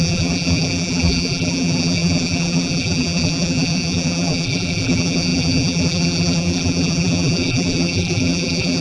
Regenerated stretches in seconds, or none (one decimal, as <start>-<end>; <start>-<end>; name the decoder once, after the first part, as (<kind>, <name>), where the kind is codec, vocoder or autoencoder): 0.0-8.8 (vocoder, BigVGAN v2)